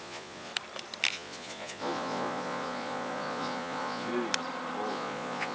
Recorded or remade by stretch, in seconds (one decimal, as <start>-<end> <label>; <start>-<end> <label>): 0.0-0.5 remade; 0.5-1.1 recorded; 1.1-4.1 remade; 4.1-4.9 recorded; 4.9-5.5 remade